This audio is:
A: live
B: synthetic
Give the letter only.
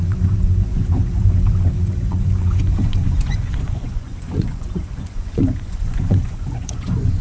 B